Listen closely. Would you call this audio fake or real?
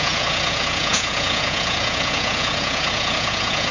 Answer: fake